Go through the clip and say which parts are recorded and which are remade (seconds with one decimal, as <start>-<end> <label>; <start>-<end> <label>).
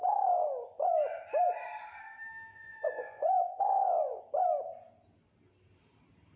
0.0-2.5 recorded; 2.5-4.2 remade; 4.2-6.4 recorded